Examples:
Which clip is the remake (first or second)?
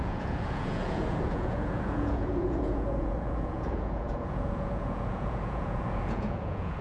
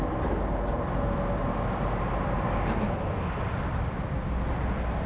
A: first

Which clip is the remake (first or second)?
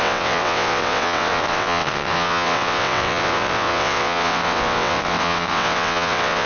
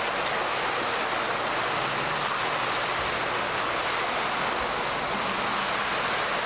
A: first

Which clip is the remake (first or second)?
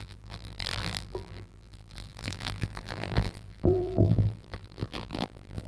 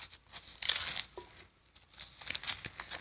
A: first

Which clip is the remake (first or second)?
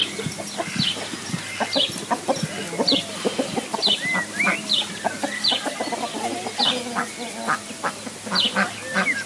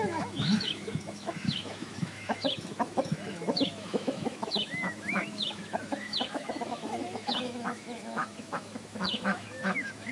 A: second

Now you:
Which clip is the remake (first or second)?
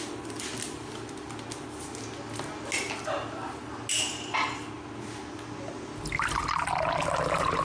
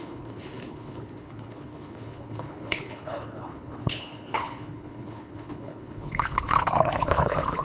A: second